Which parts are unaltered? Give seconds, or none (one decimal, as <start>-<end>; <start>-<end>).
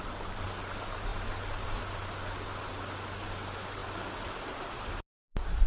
0.0-5.7